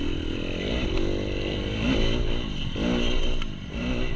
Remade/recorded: recorded